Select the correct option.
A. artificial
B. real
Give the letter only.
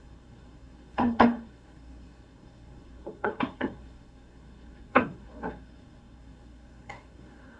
A